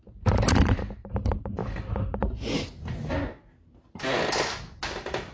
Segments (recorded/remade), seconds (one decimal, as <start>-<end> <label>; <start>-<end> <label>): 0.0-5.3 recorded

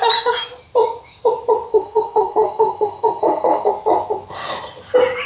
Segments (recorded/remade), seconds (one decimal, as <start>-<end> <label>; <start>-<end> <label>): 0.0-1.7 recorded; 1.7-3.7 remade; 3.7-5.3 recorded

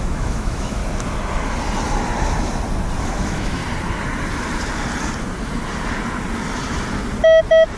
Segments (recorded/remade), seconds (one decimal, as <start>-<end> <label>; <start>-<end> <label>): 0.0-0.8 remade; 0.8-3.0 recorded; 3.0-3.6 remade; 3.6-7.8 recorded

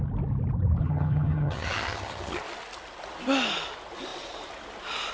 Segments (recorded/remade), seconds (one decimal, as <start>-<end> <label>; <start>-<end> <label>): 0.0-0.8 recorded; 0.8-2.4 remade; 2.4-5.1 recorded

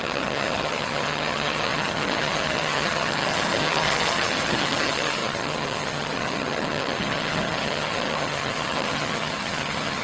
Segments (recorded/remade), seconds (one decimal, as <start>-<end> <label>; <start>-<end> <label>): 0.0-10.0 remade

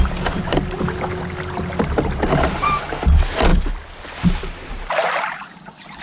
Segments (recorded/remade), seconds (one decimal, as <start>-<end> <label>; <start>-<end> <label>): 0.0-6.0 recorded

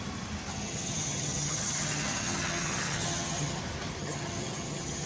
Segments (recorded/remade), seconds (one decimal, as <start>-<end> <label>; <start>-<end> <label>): 0.0-0.5 recorded; 0.5-3.6 remade; 3.6-4.0 recorded; 4.0-5.1 remade